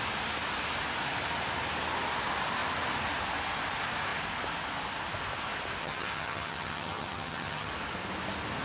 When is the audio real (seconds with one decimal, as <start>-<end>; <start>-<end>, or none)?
0.0-5.8; 7.7-8.6